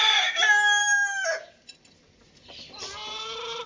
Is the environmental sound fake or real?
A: real